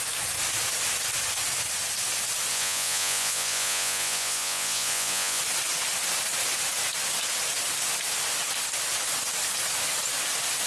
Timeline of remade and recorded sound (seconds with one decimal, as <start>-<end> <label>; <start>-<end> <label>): 0.0-2.5 recorded; 2.5-5.4 remade; 5.4-10.7 recorded